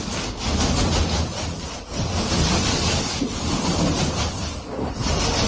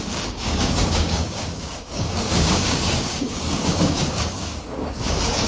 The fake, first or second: second